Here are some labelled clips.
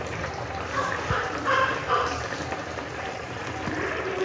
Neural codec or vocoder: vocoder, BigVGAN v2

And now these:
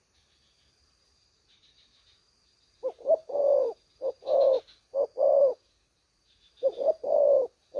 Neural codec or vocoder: vocoder, BigVGAN v2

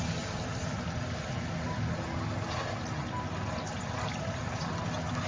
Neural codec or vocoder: none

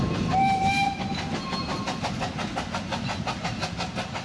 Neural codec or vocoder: none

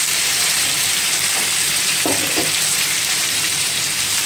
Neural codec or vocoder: vocoder, BigVGAN v2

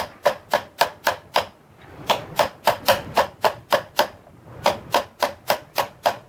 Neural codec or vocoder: none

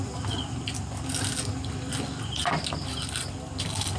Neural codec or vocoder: none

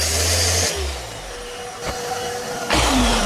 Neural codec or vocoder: vocoder, BigVGAN v2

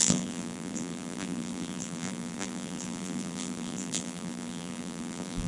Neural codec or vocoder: vocoder, BigVGAN v2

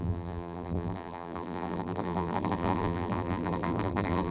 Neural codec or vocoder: vocoder, BigVGAN v2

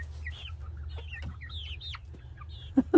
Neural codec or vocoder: none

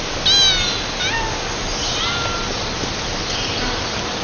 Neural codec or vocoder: none